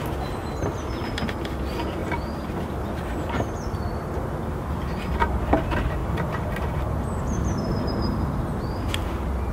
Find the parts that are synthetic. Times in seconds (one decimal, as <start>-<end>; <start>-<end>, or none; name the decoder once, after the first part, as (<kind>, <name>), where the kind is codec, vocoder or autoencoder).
2.0-4.2 (vocoder, BigVGAN v2); 6.0-9.5